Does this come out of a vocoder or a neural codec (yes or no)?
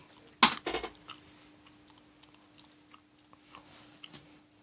no